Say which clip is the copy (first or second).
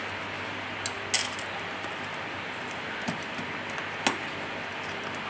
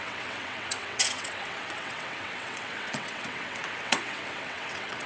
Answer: second